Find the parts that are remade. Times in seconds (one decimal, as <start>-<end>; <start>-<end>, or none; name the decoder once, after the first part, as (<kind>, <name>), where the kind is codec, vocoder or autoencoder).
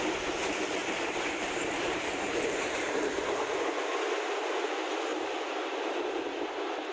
0.8-3.0 (vocoder, BigVGAN v2); 5.1-6.0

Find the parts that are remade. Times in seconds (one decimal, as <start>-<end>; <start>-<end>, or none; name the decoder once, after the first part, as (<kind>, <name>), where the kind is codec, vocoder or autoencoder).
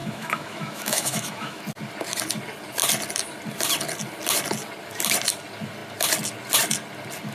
0.0-1.6 (autoencoder, DAC-VAE)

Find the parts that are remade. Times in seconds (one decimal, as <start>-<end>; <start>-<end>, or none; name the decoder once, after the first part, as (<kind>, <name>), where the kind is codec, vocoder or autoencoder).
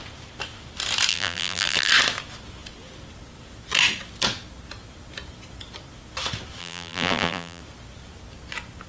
1.1-1.9 (vocoder, BigVGAN v2); 6.6-7.6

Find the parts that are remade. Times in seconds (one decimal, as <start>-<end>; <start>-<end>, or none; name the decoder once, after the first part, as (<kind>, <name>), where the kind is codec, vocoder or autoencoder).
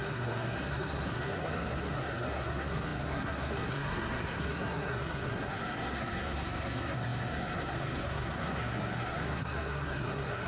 0.0-10.5 (codec, SNAC)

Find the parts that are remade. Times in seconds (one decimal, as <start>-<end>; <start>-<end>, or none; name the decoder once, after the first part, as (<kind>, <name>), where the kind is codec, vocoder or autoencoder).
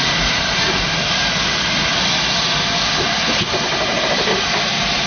none